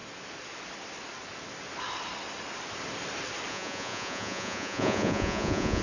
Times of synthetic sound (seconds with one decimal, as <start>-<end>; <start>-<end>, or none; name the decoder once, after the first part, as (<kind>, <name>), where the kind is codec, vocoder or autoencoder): 3.5-5.8 (vocoder, Vocos)